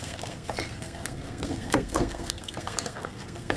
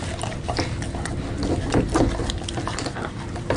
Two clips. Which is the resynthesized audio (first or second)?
first